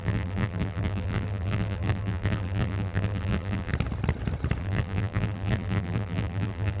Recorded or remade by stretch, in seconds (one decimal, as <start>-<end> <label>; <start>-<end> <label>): 0.0-3.7 remade; 3.7-4.6 recorded; 4.6-6.8 remade